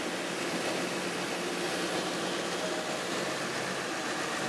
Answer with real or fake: real